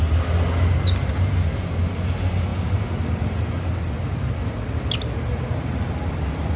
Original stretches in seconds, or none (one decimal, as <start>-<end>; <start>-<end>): 0.0-6.6